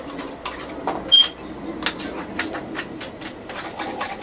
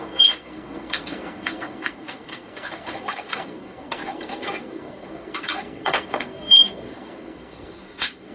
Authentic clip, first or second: first